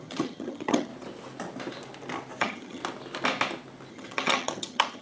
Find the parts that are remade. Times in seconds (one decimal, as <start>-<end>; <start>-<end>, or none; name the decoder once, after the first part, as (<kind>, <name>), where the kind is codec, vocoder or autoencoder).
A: 0.0-0.9 (vocoder, HiFi-GAN); 2.4-2.8; 3.9-5.0